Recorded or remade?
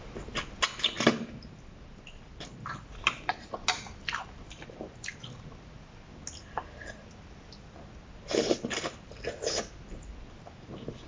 recorded